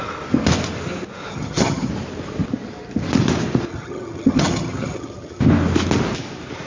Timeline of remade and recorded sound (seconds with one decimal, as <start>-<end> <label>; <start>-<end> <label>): 0.0-1.3 recorded; 1.3-1.9 remade; 1.9-3.7 recorded; 3.7-5.4 remade; 5.4-6.7 recorded